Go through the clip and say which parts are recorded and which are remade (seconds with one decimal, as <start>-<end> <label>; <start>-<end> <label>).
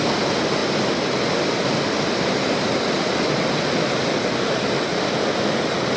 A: 0.0-6.0 recorded